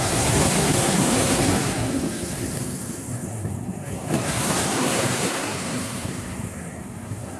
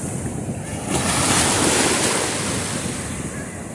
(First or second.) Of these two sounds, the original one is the second